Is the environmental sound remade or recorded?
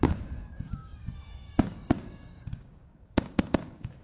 remade